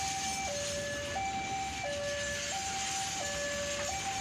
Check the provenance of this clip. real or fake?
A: real